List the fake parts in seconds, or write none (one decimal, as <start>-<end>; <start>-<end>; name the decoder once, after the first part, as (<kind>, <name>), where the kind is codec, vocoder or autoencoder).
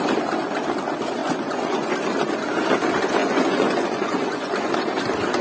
1.2-1.9 (vocoder, Vocos); 3.2-4.7